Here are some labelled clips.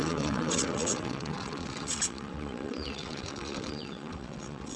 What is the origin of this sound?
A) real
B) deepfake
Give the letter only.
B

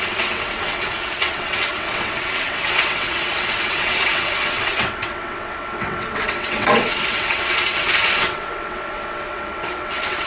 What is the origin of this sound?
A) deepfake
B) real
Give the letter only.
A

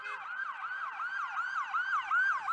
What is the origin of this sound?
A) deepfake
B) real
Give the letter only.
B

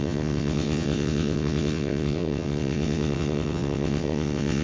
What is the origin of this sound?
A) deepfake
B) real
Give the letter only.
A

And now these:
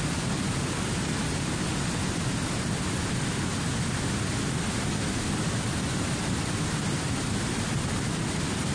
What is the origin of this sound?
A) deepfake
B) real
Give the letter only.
B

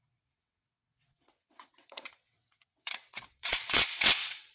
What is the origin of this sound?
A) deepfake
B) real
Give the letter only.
A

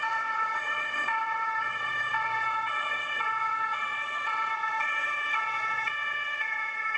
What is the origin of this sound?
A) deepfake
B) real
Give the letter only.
A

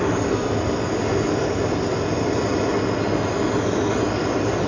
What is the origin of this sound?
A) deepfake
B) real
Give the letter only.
B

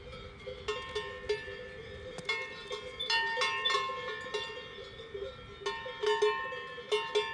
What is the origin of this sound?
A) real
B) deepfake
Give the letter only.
A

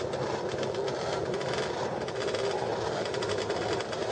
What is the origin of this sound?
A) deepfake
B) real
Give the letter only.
B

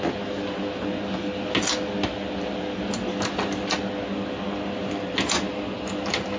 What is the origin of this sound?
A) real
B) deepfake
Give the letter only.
A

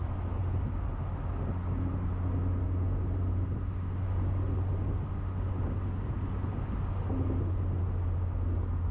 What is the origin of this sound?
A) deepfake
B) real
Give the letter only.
B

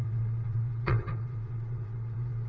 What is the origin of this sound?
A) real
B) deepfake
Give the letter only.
B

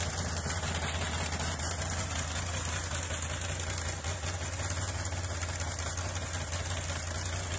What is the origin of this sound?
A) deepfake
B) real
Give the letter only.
B